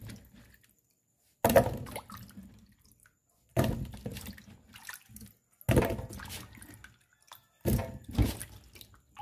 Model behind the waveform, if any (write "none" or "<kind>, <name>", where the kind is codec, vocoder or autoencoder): none